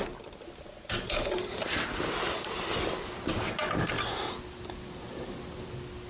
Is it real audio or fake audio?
real